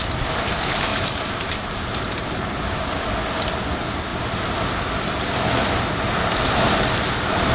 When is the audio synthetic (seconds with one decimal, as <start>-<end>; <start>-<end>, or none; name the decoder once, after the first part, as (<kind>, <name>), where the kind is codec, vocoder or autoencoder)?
0.9-2.9 (vocoder, BigVGAN v2)